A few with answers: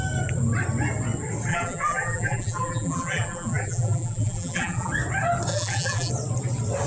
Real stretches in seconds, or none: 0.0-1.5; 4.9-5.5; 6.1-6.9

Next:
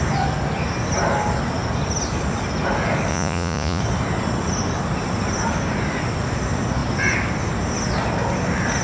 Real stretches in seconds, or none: 0.0-3.1; 3.8-8.8

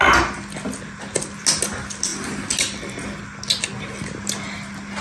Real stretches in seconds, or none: 0.0-5.0

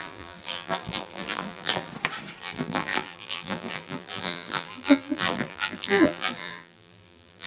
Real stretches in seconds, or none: 1.9-2.4

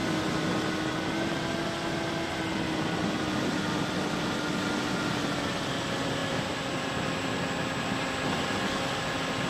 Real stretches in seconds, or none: 0.0-9.5

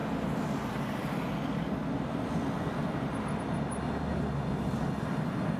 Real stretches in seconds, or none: 0.0-5.6

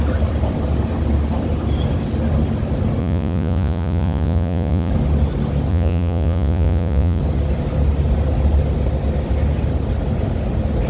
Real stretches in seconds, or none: 0.0-3.0; 4.9-5.7; 7.2-10.9

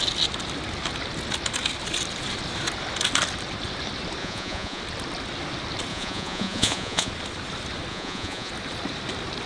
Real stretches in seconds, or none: 0.0-4.2; 4.8-5.9; 7.1-7.9; 8.5-9.5